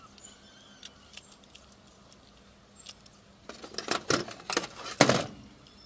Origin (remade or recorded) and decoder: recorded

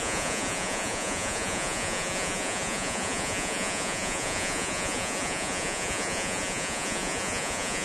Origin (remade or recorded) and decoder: remade, vocoder, Vocos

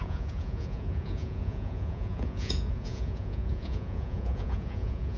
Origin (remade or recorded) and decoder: remade, vocoder, Vocos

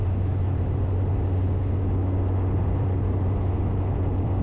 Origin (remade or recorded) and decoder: recorded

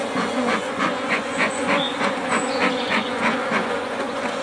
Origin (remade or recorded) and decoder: remade, vocoder, Vocos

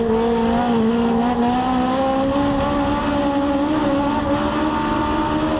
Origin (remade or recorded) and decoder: recorded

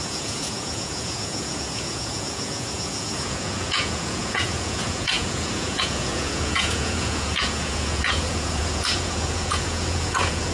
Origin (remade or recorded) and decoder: remade, vocoder, Vocos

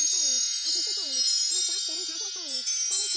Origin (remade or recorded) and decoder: remade, vocoder, Vocos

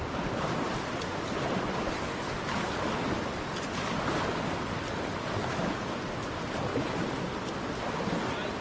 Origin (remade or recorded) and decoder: recorded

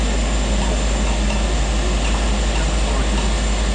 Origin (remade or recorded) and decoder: recorded